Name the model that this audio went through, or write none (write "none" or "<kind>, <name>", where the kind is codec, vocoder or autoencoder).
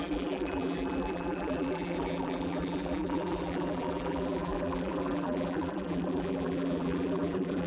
vocoder, BigVGAN v2